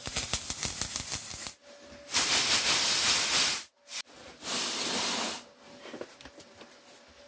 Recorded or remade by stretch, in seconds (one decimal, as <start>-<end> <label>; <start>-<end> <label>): 0.0-7.3 recorded